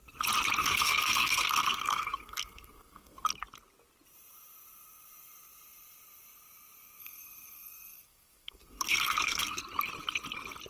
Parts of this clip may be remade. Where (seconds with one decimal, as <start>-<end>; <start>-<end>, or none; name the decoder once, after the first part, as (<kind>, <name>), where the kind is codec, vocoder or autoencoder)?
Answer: 0.6-3.3 (codec, SNAC); 7.0-9.6